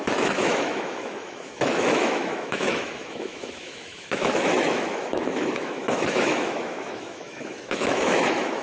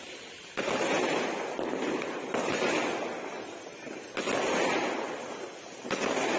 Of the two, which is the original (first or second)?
second